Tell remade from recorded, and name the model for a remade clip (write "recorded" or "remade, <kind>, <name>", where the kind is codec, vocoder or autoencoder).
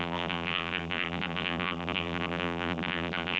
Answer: remade, vocoder, BigVGAN v2